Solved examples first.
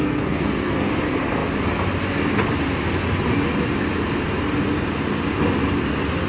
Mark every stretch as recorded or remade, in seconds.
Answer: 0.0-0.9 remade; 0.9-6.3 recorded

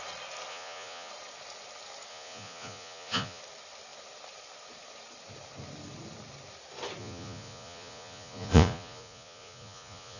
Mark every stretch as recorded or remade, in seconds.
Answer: 0.0-0.5 recorded; 0.5-1.1 remade; 1.1-2.1 recorded; 2.1-3.4 remade; 3.4-7.0 recorded; 7.0-10.2 remade

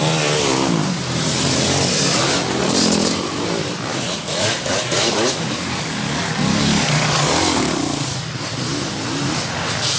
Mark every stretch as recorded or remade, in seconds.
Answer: 0.0-3.9 recorded; 3.9-8.2 remade; 8.2-10.0 recorded